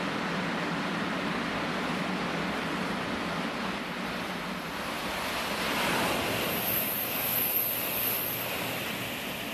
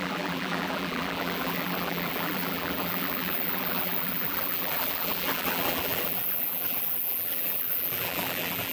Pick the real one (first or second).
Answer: first